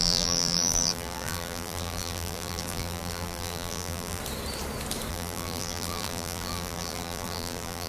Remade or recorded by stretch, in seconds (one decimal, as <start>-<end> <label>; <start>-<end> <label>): 0.0-4.2 remade; 4.2-5.1 recorded; 5.1-7.9 remade